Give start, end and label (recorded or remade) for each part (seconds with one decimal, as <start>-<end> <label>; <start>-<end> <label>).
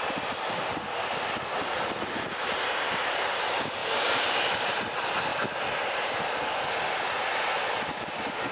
0.0-8.5 recorded